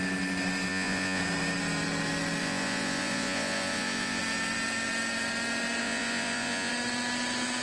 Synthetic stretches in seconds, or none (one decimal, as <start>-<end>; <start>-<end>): 0.7-1.2; 2.4-4.2; 5.8-6.7